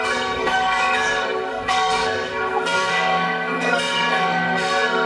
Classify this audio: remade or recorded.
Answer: remade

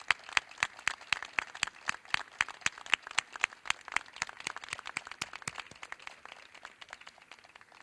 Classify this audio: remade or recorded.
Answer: recorded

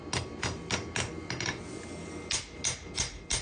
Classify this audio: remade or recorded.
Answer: recorded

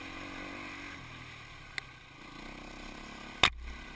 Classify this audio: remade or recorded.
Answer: recorded